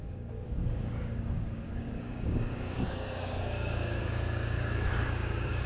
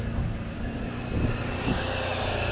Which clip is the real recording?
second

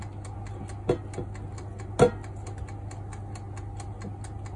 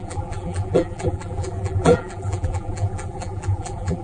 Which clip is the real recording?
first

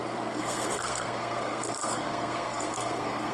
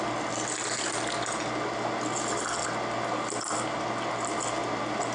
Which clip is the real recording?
second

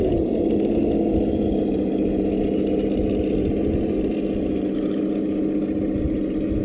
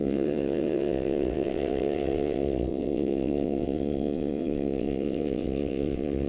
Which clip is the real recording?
first